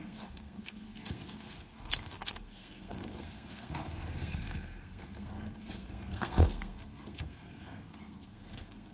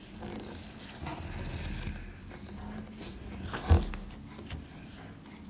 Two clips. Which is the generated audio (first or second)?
first